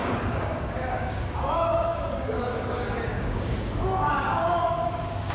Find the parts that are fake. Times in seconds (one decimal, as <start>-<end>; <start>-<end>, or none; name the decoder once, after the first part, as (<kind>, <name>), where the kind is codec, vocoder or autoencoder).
0.0-5.3 (codec, DAC)